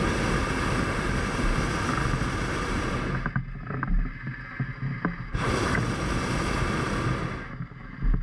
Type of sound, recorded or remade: recorded